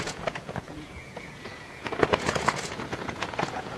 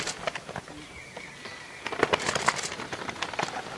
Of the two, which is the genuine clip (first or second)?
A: second